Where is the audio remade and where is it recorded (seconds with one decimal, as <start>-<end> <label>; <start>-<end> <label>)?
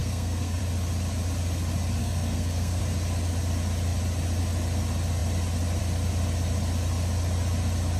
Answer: 0.0-0.6 remade; 0.6-2.0 recorded; 2.0-2.8 remade; 2.8-8.0 recorded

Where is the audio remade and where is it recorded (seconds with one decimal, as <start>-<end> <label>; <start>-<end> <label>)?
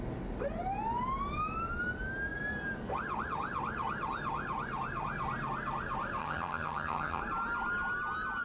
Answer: 0.0-6.2 recorded; 6.2-7.2 remade; 7.2-8.4 recorded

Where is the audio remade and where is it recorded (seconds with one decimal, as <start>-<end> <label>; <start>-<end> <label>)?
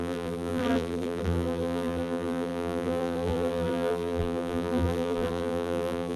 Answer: 0.0-6.2 remade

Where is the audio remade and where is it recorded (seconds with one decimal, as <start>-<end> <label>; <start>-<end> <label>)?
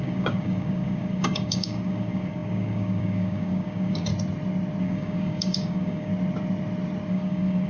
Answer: 0.0-4.1 remade; 4.1-4.8 recorded; 4.8-6.1 remade; 6.1-7.1 recorded; 7.1-7.7 remade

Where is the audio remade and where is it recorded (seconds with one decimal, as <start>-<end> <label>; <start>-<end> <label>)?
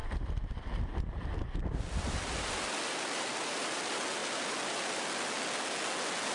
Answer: 0.0-3.8 remade; 3.8-6.3 recorded